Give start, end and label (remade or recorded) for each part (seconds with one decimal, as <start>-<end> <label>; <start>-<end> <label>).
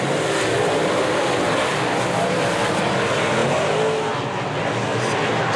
0.0-5.6 recorded